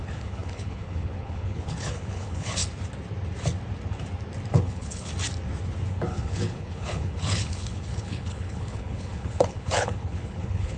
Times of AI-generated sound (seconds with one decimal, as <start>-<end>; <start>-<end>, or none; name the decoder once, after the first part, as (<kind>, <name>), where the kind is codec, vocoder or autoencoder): 0.0-2.6 (codec, HILCodec); 4.5-5.1; 5.9-10.8